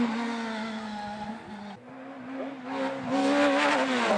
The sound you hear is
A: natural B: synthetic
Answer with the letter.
A